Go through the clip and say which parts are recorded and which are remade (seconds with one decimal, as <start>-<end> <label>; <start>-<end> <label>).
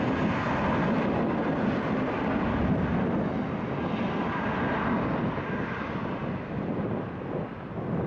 0.0-8.1 recorded